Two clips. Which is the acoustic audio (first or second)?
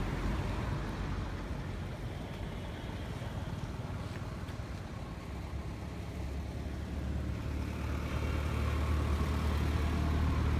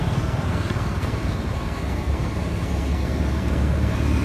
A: first